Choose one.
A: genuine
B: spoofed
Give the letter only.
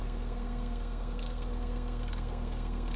B